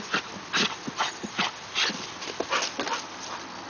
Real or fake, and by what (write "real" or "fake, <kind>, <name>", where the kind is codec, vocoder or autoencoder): real